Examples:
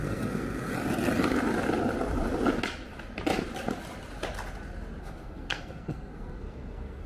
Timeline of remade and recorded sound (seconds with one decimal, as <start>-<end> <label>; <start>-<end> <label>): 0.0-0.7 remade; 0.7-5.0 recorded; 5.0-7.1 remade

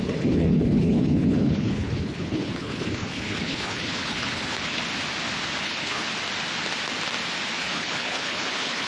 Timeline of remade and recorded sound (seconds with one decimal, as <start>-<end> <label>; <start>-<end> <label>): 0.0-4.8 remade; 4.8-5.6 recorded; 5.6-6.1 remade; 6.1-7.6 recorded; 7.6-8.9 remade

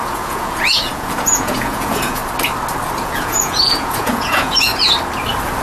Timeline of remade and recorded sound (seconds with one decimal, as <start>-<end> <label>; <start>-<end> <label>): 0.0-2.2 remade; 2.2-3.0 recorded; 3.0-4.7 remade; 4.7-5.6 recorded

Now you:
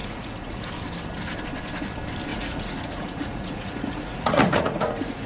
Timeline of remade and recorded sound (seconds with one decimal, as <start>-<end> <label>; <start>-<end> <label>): 0.0-0.7 remade; 0.7-2.3 recorded; 2.3-5.3 remade